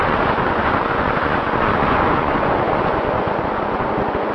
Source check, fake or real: fake